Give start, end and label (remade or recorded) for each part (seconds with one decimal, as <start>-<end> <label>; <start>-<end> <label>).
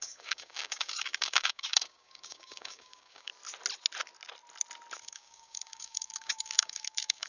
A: 0.0-3.3 remade; 3.3-5.0 recorded; 5.0-7.3 remade